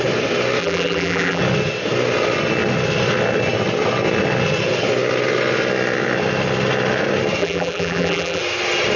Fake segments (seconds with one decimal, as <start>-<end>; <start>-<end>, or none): 0.6-1.4; 7.4-8.4